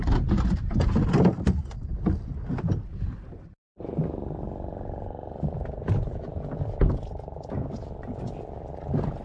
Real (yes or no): yes